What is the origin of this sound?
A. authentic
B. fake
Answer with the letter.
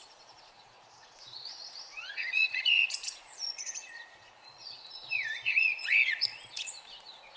B